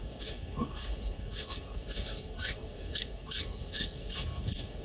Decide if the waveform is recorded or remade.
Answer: remade